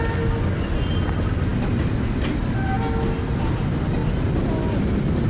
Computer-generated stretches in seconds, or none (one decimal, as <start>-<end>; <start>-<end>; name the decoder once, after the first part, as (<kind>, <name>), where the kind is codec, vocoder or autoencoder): none